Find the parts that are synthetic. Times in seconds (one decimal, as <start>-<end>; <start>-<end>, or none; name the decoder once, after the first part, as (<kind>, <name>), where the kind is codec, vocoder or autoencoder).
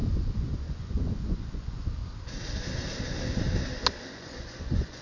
0.0-2.0 (vocoder, Vocos); 4.0-5.0